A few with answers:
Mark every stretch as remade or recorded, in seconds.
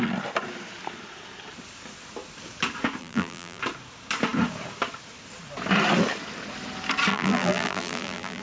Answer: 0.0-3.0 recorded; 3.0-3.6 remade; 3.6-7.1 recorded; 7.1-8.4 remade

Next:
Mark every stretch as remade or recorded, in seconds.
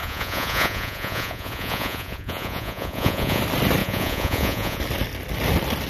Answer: 0.0-3.4 remade; 3.4-3.8 recorded; 3.8-4.8 remade; 4.8-5.9 recorded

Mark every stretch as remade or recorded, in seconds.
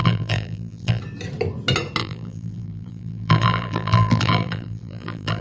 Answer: 0.0-1.0 remade; 1.0-2.0 recorded; 2.0-5.4 remade